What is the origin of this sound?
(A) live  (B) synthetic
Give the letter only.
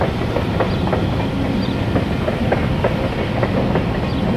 A